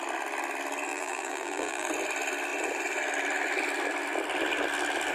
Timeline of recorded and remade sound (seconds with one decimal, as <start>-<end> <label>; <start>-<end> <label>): 0.0-0.9 recorded; 0.9-1.9 remade; 1.9-5.1 recorded